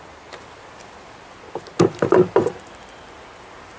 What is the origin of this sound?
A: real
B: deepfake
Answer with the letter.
A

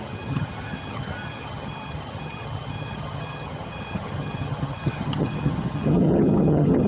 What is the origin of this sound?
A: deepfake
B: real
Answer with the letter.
A